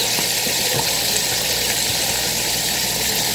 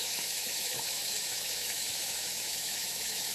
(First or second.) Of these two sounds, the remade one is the second